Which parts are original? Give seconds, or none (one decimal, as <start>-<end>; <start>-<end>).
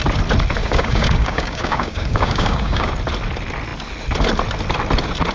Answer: 0.0-0.6; 2.9-5.3